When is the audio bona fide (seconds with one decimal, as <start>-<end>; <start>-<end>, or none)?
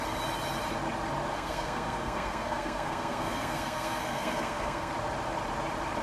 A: 0.0-1.3; 4.9-6.0